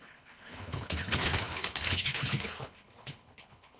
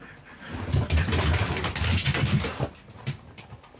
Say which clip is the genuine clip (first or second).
second